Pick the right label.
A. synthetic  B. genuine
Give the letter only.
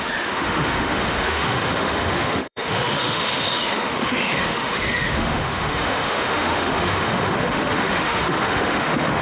A